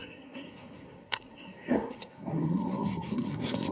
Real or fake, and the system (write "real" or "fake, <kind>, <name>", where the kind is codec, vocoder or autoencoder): fake, codec, SNAC